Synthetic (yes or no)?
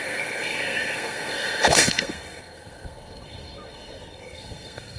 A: yes